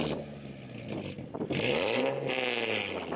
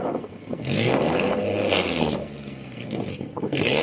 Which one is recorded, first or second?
first